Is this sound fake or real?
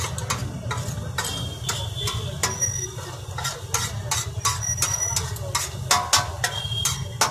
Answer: real